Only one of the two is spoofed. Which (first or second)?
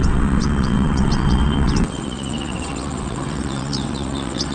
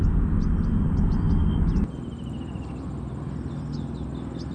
first